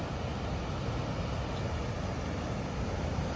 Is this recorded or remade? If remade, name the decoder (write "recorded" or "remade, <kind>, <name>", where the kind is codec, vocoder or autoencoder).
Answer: recorded